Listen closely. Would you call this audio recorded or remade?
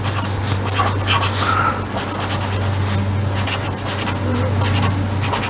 recorded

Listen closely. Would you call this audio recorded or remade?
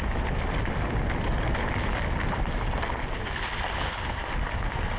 recorded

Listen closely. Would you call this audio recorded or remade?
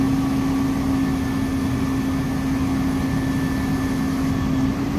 recorded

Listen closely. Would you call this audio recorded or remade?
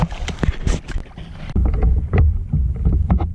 recorded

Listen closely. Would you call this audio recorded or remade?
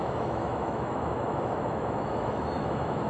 remade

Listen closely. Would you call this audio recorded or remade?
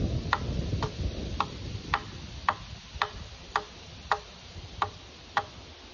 recorded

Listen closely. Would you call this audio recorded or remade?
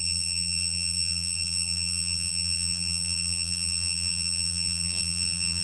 remade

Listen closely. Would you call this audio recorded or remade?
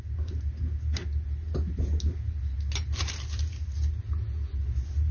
recorded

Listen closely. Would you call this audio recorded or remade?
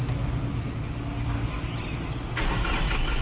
recorded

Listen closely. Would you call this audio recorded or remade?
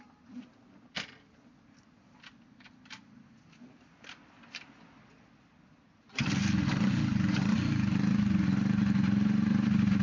recorded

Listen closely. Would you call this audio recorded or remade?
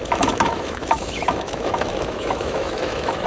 remade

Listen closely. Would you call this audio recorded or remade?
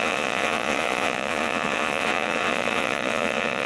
remade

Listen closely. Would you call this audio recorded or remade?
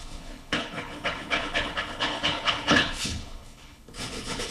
remade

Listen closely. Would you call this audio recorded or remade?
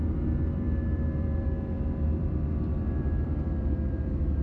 remade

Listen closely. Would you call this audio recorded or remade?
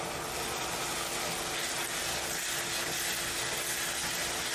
recorded